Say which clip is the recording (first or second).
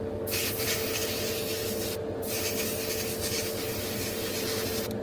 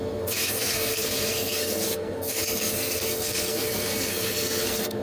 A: first